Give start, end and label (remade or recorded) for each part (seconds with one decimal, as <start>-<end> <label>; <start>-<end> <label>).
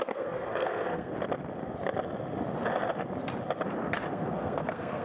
0.0-1.1 remade; 1.1-4.1 recorded; 4.1-5.0 remade